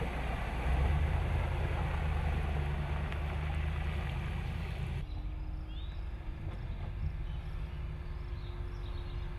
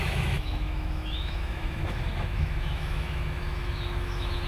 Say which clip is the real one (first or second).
first